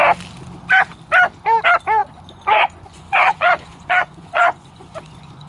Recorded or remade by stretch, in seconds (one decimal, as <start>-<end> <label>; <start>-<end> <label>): 0.0-2.0 recorded; 2.0-5.5 remade

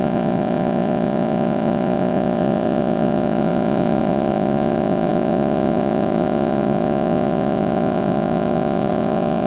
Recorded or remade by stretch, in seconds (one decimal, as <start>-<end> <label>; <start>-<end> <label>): 0.0-9.5 remade

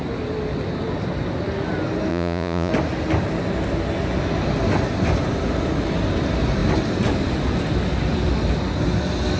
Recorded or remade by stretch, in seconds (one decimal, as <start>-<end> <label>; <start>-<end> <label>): 0.0-2.1 recorded; 2.1-2.7 remade; 2.7-9.4 recorded

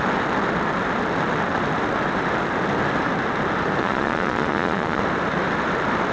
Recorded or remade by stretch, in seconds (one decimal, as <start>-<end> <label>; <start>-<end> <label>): 0.0-3.8 recorded; 3.8-5.0 remade; 5.0-6.1 recorded

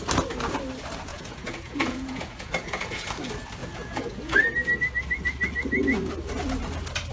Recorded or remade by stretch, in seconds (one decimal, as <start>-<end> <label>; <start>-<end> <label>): 0.0-1.1 recorded; 1.1-3.1 remade; 3.1-3.6 recorded; 3.6-4.4 remade; 4.4-7.1 recorded

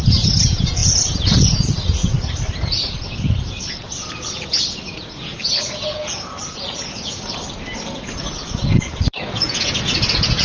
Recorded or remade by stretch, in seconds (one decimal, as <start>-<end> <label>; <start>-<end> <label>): 0.0-2.0 remade; 2.0-2.6 recorded; 2.6-7.4 remade; 7.4-8.0 recorded; 8.0-10.4 remade

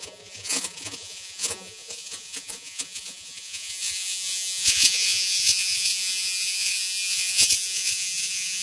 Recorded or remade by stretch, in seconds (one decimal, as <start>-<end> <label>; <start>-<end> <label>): 0.0-8.6 remade

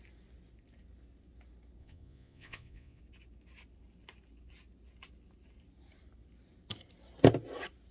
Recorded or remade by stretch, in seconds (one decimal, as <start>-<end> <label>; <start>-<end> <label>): 0.0-1.8 recorded; 1.8-3.0 remade; 3.0-7.9 recorded